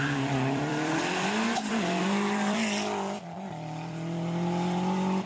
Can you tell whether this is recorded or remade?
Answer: remade